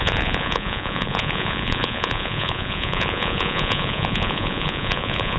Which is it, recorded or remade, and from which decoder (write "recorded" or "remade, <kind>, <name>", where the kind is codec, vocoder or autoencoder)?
remade, vocoder, Vocos